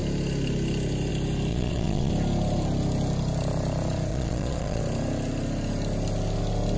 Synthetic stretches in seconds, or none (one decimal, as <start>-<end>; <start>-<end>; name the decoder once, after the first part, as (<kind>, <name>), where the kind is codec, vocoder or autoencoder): 1.5-2.1 (vocoder, Vocos); 4.1-4.8